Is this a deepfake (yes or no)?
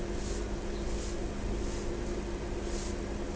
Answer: no